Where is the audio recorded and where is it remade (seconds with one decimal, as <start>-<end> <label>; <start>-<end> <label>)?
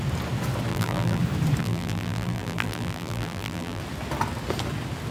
0.0-0.7 recorded; 0.7-1.2 remade; 1.2-1.6 recorded; 1.6-3.8 remade; 3.8-5.1 recorded